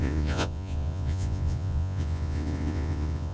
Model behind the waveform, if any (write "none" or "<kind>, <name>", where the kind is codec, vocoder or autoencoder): vocoder, Vocos